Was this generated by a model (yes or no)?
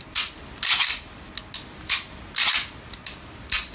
no